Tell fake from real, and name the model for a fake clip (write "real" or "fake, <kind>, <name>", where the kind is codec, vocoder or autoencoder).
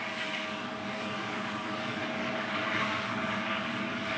fake, codec, DAC